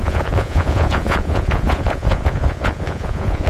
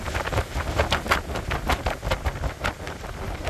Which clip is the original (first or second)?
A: second